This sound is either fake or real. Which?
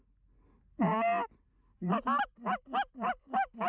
real